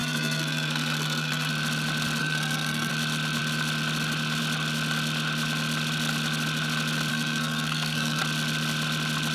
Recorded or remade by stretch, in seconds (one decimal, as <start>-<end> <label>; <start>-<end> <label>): 0.0-1.5 remade; 1.5-2.2 recorded; 2.2-2.9 remade; 2.9-7.1 recorded; 7.1-8.2 remade; 8.2-9.3 recorded